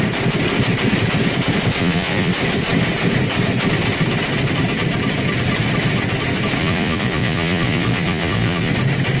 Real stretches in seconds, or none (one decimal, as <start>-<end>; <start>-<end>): 0.0-1.8; 2.3-6.6; 8.7-9.2